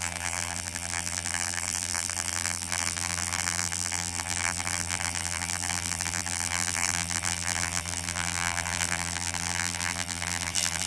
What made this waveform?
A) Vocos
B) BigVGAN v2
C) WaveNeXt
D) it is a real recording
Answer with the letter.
B